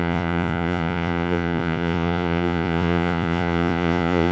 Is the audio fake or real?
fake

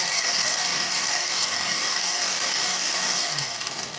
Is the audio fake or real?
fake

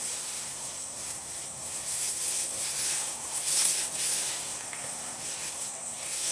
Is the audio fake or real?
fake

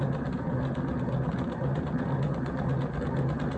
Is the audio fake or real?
real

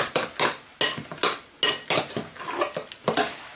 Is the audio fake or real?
real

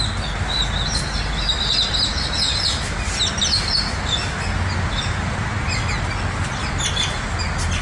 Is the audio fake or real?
real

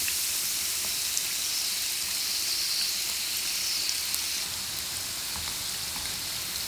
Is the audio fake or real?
real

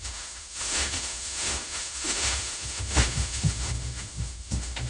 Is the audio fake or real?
fake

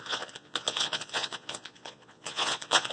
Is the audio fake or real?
fake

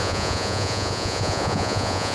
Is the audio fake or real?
fake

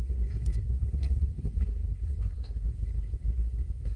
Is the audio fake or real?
fake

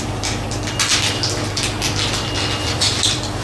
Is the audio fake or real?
real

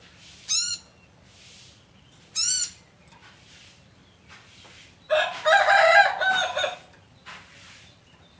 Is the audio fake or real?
real